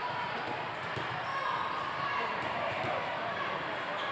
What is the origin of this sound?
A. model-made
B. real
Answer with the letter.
A